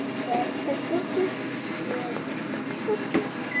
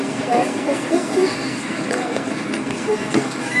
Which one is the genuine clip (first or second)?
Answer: first